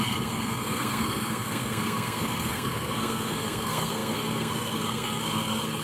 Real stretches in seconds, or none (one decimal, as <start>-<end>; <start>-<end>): none